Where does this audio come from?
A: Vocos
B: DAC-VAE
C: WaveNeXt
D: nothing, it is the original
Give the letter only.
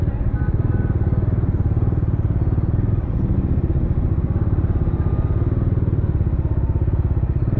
D